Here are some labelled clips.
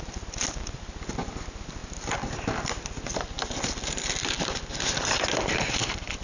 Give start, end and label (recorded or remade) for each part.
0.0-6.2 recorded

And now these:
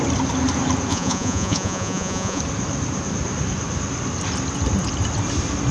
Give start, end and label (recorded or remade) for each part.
0.0-0.9 recorded; 0.9-2.4 remade; 2.4-5.7 recorded